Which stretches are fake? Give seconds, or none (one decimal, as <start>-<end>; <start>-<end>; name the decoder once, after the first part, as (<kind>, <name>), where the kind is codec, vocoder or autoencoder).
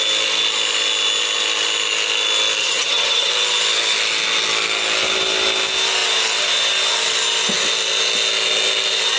2.6-3.3 (vocoder, HiFi-GAN)